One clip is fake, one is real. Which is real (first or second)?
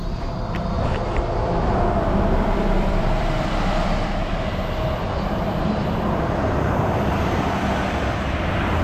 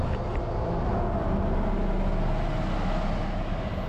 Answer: second